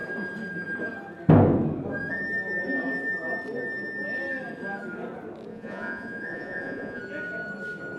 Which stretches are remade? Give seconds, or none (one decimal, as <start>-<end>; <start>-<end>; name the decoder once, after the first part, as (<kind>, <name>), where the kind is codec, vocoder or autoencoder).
5.5-7.0 (vocoder, Vocos)